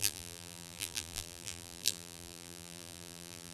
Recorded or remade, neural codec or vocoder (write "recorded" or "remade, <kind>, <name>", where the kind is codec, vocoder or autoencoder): remade, vocoder, BigVGAN v2